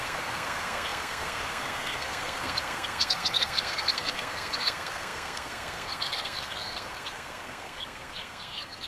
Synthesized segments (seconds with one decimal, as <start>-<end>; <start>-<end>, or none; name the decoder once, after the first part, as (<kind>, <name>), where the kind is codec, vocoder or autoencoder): 0.0-8.9 (codec, SNAC)